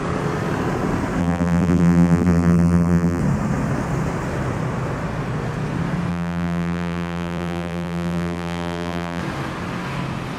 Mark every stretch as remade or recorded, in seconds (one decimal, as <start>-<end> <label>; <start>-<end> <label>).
0.0-1.2 recorded; 1.2-3.2 remade; 3.2-6.1 recorded; 6.1-9.2 remade; 9.2-10.4 recorded